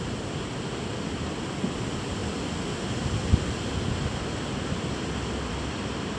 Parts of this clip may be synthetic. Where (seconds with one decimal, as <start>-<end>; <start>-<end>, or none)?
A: none